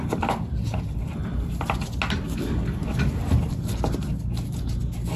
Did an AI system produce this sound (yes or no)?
no